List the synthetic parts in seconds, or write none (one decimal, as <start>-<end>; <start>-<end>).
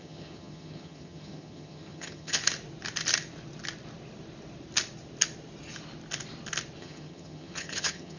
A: 0.0-2.4; 6.8-8.2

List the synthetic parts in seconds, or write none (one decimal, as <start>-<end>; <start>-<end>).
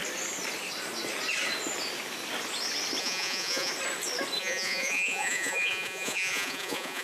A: 3.0-3.7; 4.4-7.0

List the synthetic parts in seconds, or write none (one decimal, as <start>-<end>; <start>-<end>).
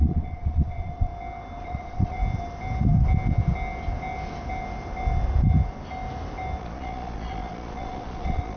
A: 0.0-1.1; 1.6-2.2; 6.6-8.6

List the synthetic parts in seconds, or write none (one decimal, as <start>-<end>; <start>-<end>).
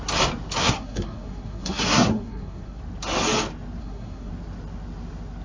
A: 0.6-2.8; 3.8-4.3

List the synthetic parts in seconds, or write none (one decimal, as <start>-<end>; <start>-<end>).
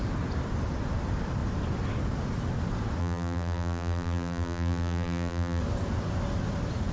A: 3.0-5.6